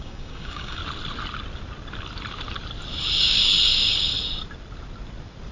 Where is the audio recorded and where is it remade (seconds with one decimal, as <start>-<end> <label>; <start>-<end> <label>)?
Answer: 0.0-0.8 remade; 0.8-3.2 recorded; 3.2-4.1 remade; 4.1-5.5 recorded